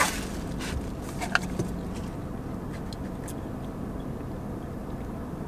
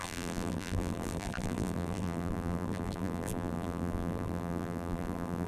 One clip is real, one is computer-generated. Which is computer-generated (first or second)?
second